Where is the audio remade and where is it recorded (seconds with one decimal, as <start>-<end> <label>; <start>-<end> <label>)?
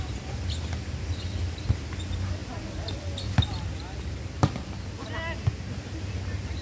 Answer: 0.0-6.6 recorded